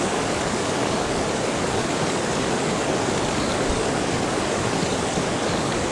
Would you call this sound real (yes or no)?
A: no